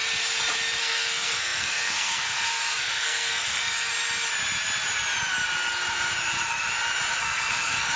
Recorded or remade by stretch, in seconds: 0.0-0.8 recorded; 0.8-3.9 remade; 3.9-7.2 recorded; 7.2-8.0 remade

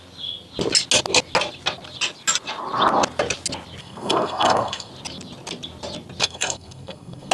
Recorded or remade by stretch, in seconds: 0.0-3.8 recorded; 3.8-4.9 remade; 4.9-6.2 recorded; 6.2-7.3 remade

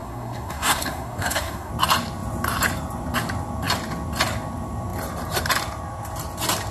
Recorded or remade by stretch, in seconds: 0.0-1.7 remade; 1.7-6.7 recorded

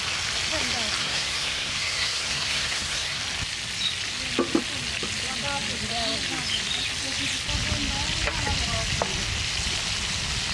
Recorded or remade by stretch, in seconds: 0.0-1.0 recorded; 1.0-3.2 remade; 3.2-10.5 recorded